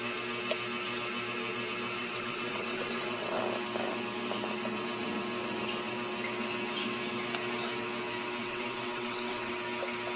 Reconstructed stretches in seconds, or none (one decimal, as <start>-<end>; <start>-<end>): 2.0-3.4; 8.4-9.5